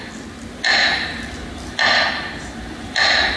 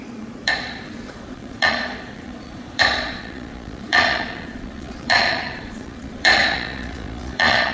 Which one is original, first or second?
first